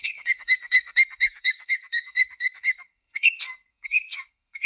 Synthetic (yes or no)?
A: yes